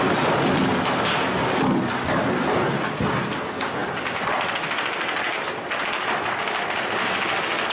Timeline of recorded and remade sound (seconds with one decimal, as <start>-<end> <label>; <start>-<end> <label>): 0.0-7.7 recorded